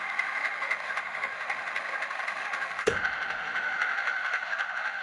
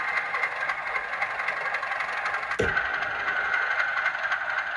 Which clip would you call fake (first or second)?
first